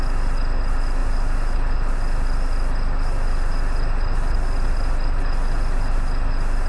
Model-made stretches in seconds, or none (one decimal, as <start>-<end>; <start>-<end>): none